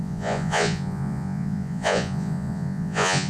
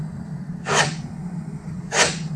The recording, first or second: second